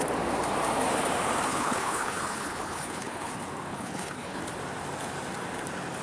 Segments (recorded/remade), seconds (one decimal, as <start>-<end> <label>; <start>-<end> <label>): 0.0-1.5 recorded; 1.5-3.3 remade; 3.3-3.7 recorded; 3.7-4.4 remade; 4.4-6.0 recorded